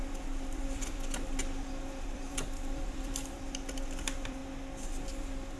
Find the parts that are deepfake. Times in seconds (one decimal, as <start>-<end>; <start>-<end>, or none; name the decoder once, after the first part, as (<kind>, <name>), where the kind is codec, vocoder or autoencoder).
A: 0.0-4.4 (vocoder, BigVGAN v2)